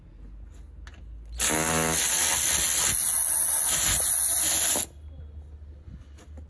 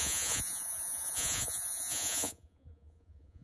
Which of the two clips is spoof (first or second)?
second